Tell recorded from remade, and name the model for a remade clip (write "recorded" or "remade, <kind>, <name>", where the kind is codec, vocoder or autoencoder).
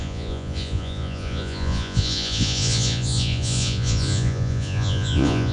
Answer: remade, vocoder, Vocos